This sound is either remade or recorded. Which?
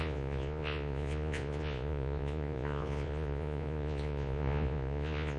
remade